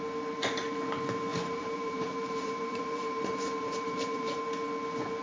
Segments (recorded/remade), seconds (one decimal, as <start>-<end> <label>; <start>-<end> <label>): 0.0-1.3 recorded; 1.3-4.4 remade; 4.4-5.2 recorded